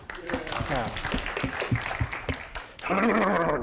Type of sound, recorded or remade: recorded